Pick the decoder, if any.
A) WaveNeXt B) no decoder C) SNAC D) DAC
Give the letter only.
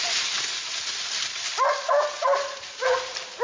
B